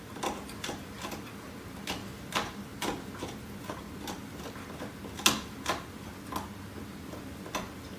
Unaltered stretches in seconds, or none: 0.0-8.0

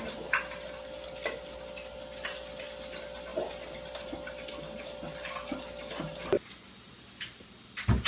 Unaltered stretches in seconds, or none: 0.0-8.1

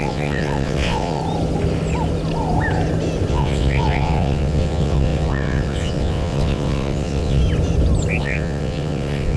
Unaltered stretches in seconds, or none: 1.2-3.3; 7.4-8.2

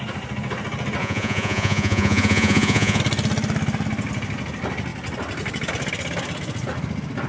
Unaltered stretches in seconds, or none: 0.0-1.0; 3.0-7.3

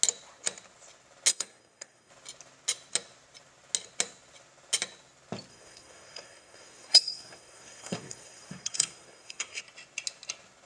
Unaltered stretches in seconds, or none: 0.0-1.3; 2.1-5.5; 9.6-10.7

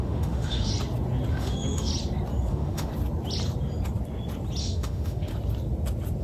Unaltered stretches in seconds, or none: 0.7-1.3; 1.9-2.5; 2.9-4.6; 5.3-6.2